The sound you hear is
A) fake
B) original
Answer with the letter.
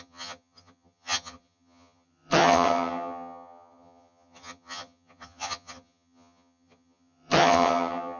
A